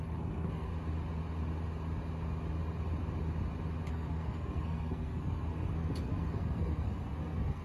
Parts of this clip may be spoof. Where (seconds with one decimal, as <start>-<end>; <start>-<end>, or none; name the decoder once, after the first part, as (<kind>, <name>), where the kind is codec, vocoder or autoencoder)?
0.0-0.7 (codec, SNAC); 3.9-7.6